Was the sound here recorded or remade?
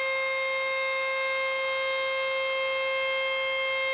recorded